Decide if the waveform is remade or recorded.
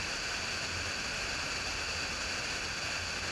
recorded